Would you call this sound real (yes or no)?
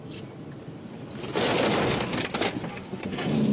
yes